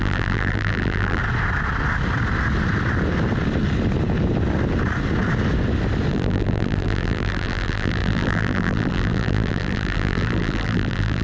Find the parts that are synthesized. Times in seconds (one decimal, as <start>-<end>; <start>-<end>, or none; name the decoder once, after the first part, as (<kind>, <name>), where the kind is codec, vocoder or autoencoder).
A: 0.0-1.2 (vocoder, BigVGAN v2); 6.1-11.2